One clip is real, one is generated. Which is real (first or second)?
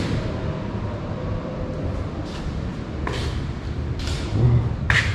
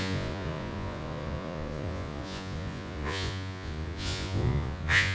first